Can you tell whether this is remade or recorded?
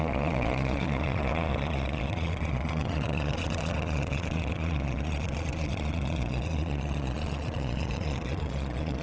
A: remade